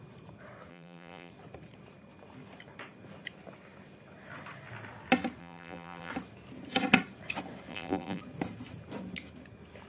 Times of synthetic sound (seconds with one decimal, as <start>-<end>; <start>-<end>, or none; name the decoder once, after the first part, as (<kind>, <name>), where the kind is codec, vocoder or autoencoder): 0.7-1.3 (vocoder, BigVGAN v2); 5.4-6.1; 7.7-8.2